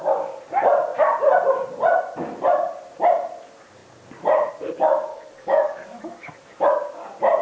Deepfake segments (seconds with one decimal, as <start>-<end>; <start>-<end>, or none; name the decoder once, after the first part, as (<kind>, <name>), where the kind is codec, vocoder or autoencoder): 5.1-6.3 (codec, DAC)